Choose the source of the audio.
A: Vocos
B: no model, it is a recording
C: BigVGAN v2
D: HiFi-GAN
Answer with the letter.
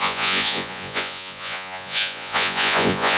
A